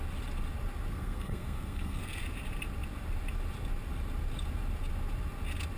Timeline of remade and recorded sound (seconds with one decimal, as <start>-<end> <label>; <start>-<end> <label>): 0.0-0.9 recorded; 0.9-2.2 remade; 2.2-5.8 recorded